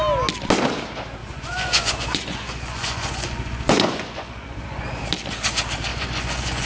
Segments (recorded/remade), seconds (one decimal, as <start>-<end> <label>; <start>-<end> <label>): 0.0-1.2 recorded; 1.2-5.0 remade; 5.0-5.9 recorded; 5.9-6.7 remade